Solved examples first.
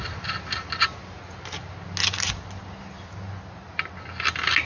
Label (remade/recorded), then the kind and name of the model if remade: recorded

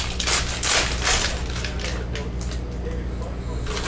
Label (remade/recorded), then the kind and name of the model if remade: recorded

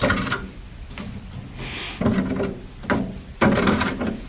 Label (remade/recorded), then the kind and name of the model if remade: recorded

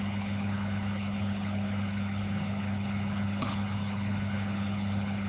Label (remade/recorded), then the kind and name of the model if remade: remade, codec, HILCodec